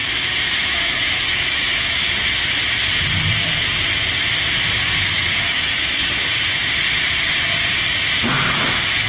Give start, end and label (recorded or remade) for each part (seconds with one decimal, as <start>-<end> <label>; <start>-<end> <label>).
0.0-2.0 remade; 2.0-5.0 recorded; 5.0-6.0 remade; 6.0-8.3 recorded; 8.3-9.1 remade